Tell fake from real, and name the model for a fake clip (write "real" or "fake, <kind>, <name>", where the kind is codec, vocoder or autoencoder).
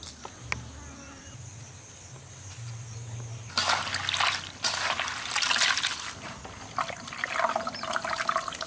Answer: real